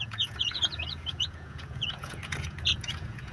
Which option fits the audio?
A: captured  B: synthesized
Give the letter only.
B